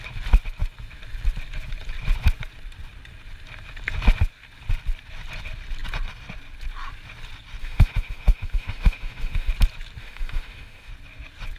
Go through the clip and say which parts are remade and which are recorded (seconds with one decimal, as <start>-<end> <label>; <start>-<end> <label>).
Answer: 0.0-7.6 recorded; 7.6-9.5 remade; 9.5-10.0 recorded; 10.0-10.9 remade; 10.9-11.6 recorded